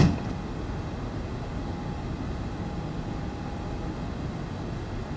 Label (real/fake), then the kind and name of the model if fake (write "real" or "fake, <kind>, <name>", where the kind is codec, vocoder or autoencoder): real